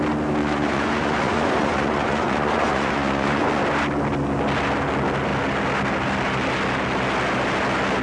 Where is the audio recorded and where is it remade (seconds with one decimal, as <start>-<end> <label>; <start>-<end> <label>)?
0.0-0.4 recorded; 0.4-3.6 remade; 3.6-8.0 recorded